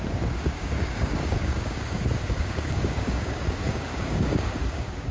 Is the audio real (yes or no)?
no